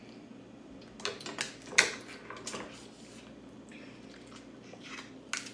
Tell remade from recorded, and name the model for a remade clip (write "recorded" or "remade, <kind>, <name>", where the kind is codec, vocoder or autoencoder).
recorded